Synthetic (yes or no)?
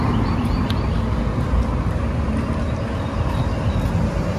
no